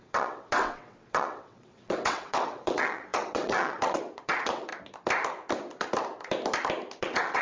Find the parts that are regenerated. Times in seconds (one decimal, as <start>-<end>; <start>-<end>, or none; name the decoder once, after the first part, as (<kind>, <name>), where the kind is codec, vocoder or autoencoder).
0.0-4.7 (vocoder, WaveNeXt); 7.0-7.4